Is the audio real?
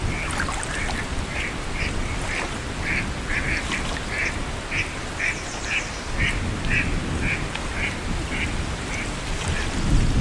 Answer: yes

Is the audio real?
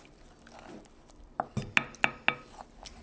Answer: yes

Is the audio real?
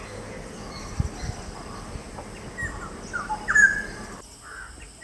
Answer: yes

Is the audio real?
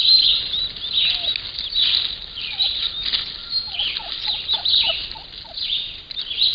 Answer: yes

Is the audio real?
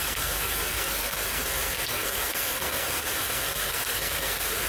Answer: no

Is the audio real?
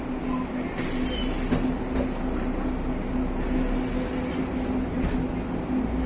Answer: yes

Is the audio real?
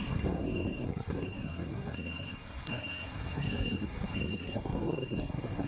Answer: no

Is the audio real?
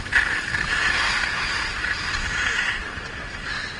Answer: yes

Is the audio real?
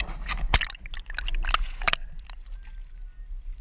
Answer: yes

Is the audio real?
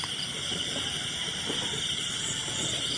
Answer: yes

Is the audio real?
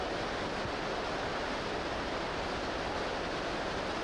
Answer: yes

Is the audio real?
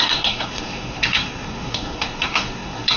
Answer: no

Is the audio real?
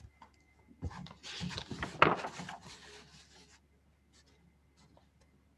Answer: yes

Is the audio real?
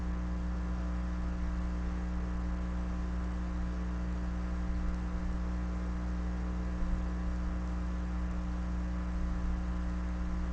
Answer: yes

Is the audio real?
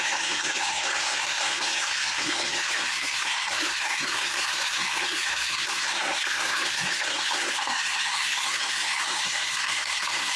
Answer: no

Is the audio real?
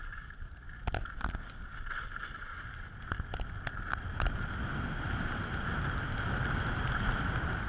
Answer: yes